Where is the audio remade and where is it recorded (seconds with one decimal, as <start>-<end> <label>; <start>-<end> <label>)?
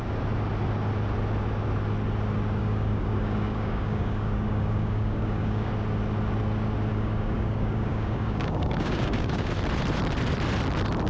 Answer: 0.0-2.6 recorded; 2.6-5.7 remade; 5.7-6.9 recorded; 6.9-9.5 remade; 9.5-11.1 recorded